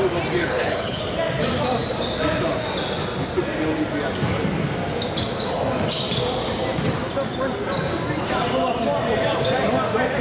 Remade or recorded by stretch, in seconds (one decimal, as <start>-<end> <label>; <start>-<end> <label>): 0.0-0.4 recorded; 0.4-1.0 remade; 1.0-10.2 recorded